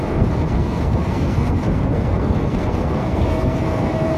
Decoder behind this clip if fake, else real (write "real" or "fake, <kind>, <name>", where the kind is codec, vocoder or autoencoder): fake, codec, SNAC